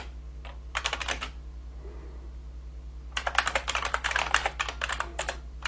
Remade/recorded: recorded